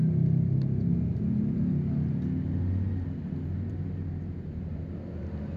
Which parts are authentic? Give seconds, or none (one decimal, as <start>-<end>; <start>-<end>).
0.0-3.2; 4.7-5.6

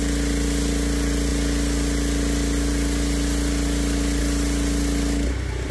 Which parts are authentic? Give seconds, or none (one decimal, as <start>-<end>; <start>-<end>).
0.0-5.7